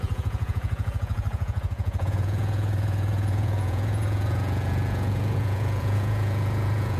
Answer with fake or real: fake